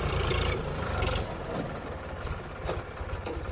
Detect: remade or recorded remade